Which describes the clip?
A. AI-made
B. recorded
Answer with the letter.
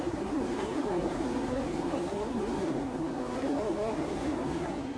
A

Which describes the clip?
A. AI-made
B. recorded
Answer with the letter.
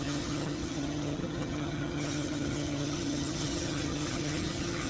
A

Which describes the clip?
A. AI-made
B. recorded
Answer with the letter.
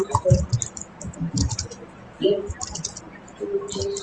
B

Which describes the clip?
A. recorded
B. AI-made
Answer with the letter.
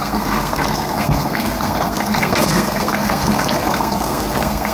B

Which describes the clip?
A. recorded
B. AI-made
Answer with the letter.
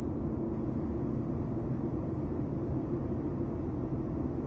A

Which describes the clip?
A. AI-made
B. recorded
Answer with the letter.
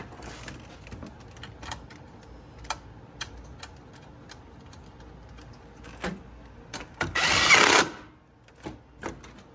B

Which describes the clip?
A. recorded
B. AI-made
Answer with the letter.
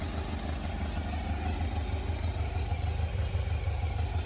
A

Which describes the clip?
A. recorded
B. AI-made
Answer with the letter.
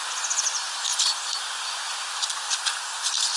A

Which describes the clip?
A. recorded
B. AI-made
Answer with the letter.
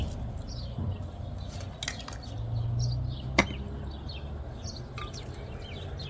A